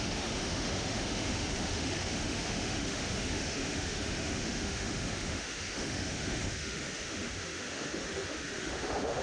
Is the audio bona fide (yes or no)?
no